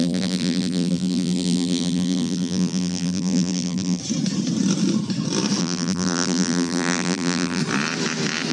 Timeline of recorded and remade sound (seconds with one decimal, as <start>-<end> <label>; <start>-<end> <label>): 0.0-4.0 remade; 4.0-5.6 recorded; 5.6-7.6 remade; 7.6-8.5 recorded